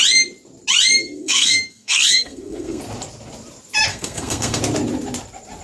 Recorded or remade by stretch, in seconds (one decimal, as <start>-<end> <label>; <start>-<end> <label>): 0.0-1.0 recorded; 1.0-2.8 remade; 2.8-3.9 recorded; 3.9-4.6 remade; 4.6-5.6 recorded